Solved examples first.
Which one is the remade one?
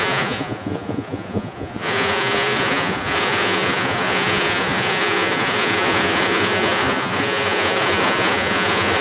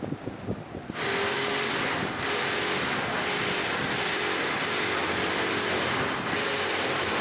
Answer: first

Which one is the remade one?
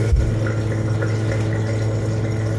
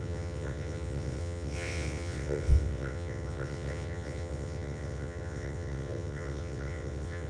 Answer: second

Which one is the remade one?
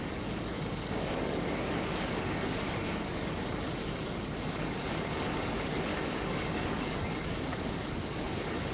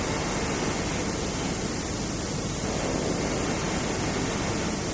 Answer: first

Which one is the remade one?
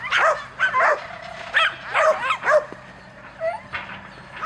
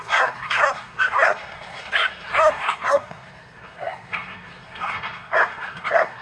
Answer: second